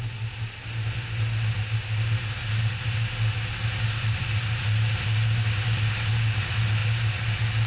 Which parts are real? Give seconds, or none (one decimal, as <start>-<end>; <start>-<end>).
0.0-7.7